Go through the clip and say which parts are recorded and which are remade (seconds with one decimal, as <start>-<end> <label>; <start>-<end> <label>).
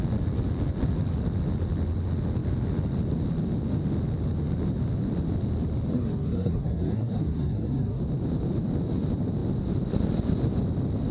0.0-5.9 recorded; 5.9-8.0 remade; 8.0-11.1 recorded